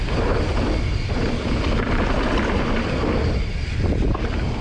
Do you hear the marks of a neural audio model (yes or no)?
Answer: yes